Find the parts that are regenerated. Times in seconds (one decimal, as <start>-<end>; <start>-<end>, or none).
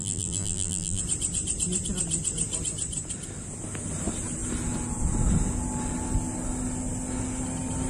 0.0-1.0